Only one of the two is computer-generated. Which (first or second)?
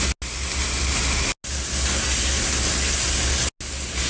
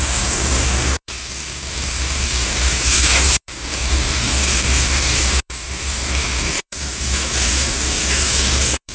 second